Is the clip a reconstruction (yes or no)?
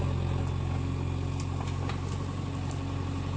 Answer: no